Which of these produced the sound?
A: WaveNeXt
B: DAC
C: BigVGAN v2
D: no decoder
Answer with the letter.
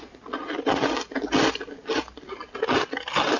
D